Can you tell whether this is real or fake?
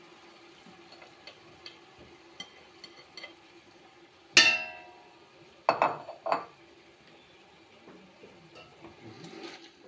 real